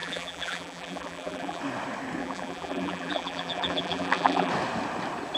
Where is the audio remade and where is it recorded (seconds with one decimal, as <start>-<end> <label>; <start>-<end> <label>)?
0.0-1.6 remade; 1.6-2.2 recorded; 2.2-4.5 remade; 4.5-5.4 recorded